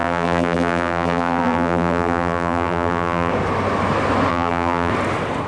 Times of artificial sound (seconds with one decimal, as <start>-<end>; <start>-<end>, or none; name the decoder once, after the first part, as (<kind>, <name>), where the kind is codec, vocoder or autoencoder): 0.0-3.3 (vocoder, BigVGAN v2); 4.3-4.9